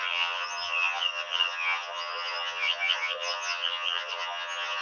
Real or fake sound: fake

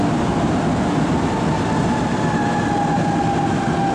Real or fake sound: real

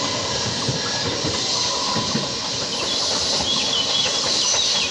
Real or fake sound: fake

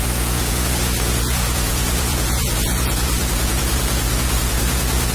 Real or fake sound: fake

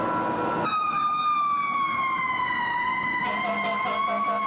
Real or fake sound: real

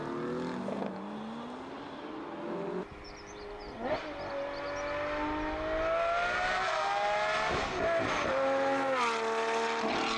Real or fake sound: real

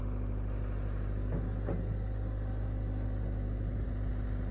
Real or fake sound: real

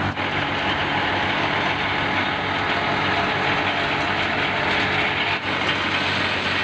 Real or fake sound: real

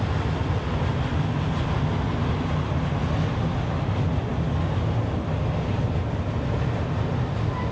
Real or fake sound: real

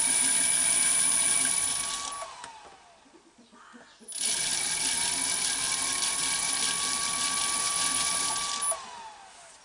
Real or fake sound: real